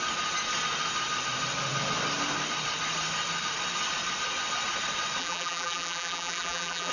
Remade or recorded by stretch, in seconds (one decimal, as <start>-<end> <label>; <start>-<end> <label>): 0.0-5.2 recorded; 5.2-6.9 remade